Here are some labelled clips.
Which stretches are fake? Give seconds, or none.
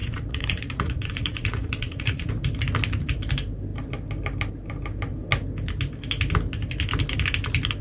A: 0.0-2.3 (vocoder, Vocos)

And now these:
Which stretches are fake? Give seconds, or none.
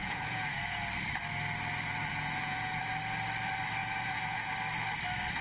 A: 0.0-0.8 (vocoder, Vocos); 2.1-2.8; 3.8-4.5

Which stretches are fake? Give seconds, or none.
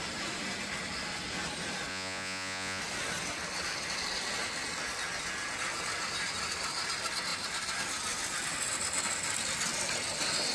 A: 1.9-2.8 (vocoder, Vocos)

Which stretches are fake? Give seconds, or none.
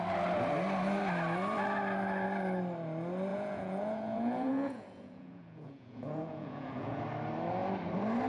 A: 3.3-7.0 (vocoder, Vocos)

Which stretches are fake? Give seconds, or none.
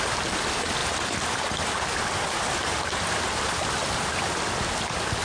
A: none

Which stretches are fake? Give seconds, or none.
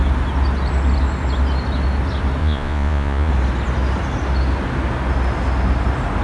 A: 2.4-3.3 (vocoder, Vocos)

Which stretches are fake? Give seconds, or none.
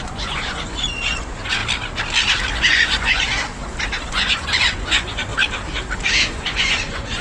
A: 0.0-1.6 (vocoder, Vocos); 2.7-3.5; 4.1-5.3; 6.2-7.2